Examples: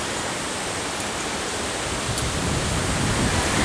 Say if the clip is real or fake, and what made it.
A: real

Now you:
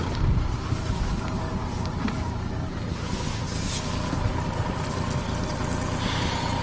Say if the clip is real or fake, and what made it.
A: real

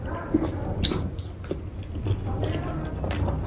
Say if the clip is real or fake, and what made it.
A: real